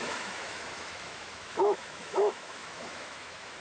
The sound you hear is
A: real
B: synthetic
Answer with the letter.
B